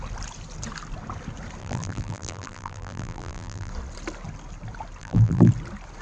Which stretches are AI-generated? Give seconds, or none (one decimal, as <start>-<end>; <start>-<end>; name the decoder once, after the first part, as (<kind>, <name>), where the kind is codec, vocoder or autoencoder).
1.6-3.7 (vocoder, BigVGAN v2); 5.0-5.5